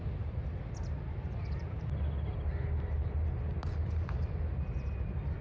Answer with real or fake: real